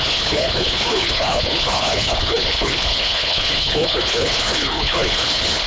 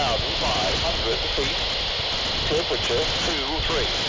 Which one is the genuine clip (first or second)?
second